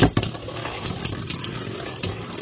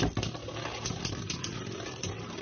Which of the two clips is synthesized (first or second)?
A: first